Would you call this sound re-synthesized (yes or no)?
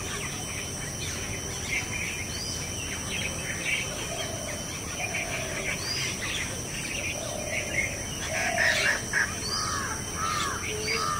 no